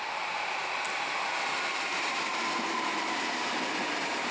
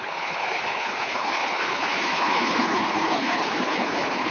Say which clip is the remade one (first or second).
second